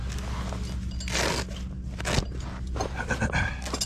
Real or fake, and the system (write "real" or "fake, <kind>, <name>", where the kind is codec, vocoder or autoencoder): real